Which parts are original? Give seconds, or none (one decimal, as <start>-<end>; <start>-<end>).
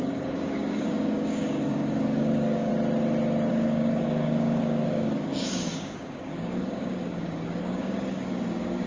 2.7-3.5